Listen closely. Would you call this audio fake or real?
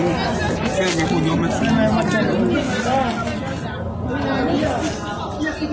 real